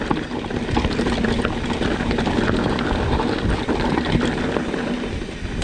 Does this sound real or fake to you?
real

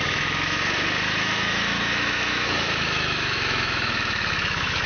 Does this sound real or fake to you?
fake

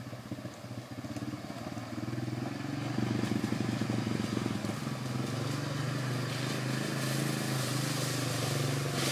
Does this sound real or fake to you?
real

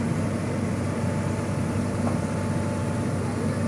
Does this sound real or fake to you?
real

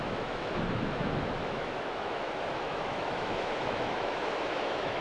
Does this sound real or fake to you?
fake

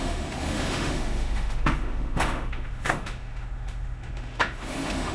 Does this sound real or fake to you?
fake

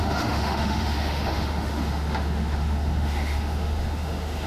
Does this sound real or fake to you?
fake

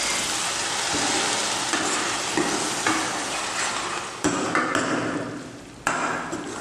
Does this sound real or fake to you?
real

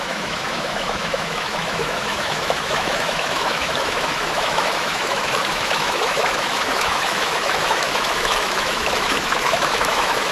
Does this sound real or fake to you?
fake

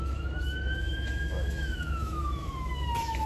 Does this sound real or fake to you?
fake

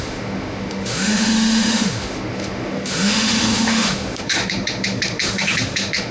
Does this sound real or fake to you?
fake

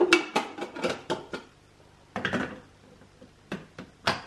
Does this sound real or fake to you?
real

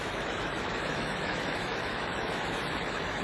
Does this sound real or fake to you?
fake